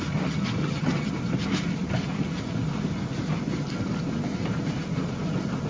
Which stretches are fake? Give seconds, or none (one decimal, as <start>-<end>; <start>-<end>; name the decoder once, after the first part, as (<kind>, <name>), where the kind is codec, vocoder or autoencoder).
0.6-1.1 (vocoder, HiFi-GAN)